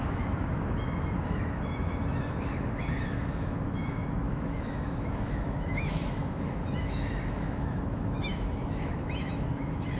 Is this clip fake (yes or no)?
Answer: yes